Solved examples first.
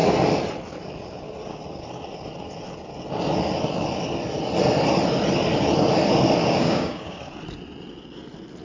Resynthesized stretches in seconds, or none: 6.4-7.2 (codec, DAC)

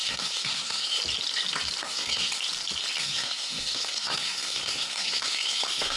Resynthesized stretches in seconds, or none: 0.0-1.0 (codec, SNAC); 1.8-2.3; 3.0-6.0

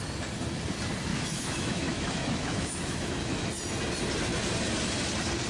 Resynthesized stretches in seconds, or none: 1.1-3.5 (autoencoder, DAC-VAE)

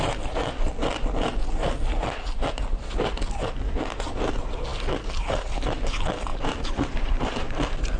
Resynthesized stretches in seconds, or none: 6.3-8.0 (vocoder, BigVGAN v2)

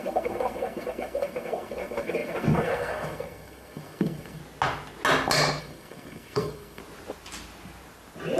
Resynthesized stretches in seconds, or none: 0.0-4.4 (codec, SNAC); 5.6-6.8

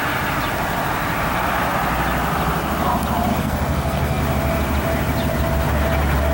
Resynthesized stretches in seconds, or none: 3.3-4.2 (codec, SNAC)

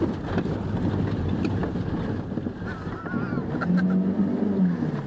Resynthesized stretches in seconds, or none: none